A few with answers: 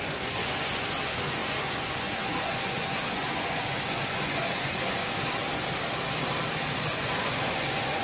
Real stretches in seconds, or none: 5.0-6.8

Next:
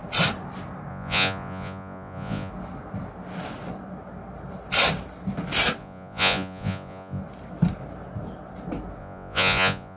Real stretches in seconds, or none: 0.0-0.9; 2.5-5.8; 7.2-9.0